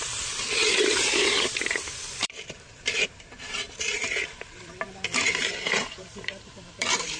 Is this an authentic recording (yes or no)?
no